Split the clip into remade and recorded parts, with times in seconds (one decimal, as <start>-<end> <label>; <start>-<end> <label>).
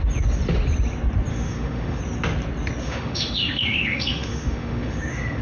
0.0-1.3 recorded; 1.3-2.0 remade; 2.0-2.8 recorded; 2.8-5.4 remade